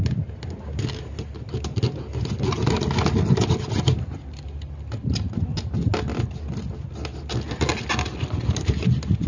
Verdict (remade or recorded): recorded